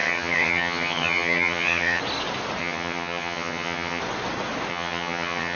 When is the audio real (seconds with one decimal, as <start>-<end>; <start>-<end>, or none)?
2.0-2.6; 4.0-4.7